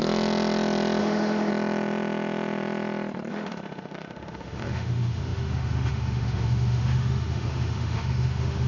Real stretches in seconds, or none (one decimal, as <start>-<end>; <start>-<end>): 0.0-1.0; 1.5-3.3